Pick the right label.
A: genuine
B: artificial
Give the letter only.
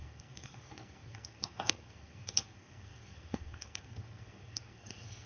B